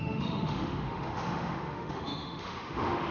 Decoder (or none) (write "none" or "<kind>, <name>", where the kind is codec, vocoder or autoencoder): autoencoder, DAC-VAE